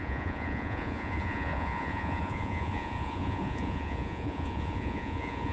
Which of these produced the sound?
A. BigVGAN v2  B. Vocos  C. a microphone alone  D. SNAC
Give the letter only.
B